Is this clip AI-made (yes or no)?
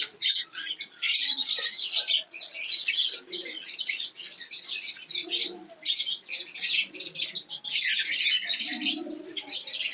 no